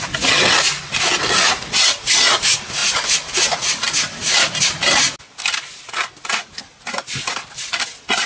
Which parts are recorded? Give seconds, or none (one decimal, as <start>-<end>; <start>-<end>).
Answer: 0.0-8.3